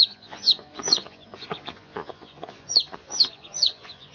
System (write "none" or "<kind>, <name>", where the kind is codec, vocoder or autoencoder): vocoder, Vocos